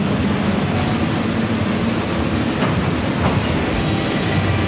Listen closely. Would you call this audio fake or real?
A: real